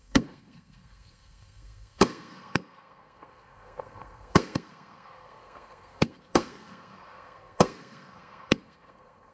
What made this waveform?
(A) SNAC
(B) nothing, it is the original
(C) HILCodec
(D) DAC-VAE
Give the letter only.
A